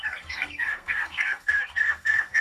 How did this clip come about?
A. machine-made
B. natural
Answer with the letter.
A